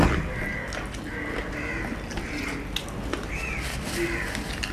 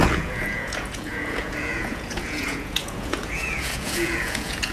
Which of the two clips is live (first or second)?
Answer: first